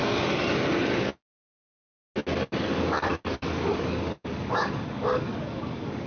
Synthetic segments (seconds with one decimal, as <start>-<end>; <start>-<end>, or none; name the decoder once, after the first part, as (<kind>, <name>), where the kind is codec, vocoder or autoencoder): 2.3-6.1 (codec, DAC)